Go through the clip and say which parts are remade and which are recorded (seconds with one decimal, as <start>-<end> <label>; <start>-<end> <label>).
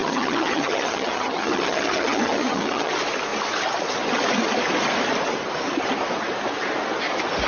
0.0-2.9 remade; 2.9-7.5 recorded